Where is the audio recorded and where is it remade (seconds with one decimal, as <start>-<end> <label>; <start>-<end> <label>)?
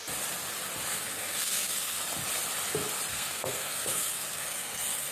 0.0-0.9 recorded; 0.9-2.0 remade; 2.0-3.1 recorded; 3.1-5.1 remade